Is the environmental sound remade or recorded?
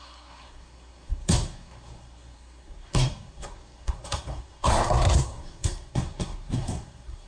remade